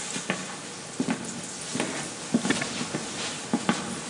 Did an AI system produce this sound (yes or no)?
no